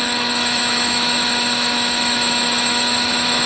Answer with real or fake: fake